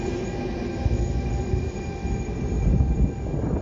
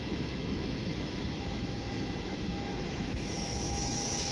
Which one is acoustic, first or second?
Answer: first